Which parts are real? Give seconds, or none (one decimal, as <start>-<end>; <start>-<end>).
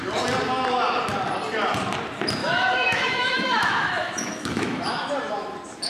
0.0-2.4; 5.1-5.9